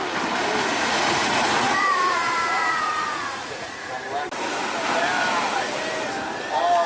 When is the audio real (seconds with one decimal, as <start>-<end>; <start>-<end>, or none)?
0.0-0.7; 3.9-6.9